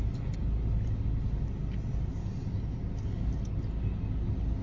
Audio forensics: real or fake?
real